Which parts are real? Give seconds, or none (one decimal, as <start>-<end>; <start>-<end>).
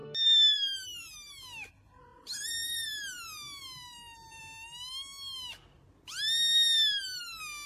0.0-2.1; 4.4-7.7